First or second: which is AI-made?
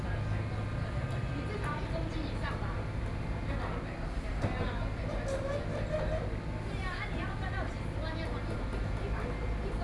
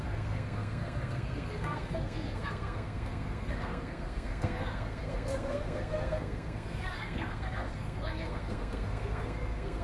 second